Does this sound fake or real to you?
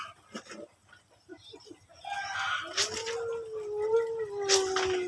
real